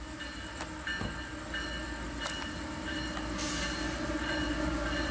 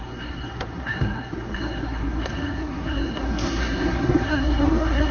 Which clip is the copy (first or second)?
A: second